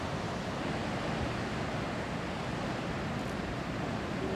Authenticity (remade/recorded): recorded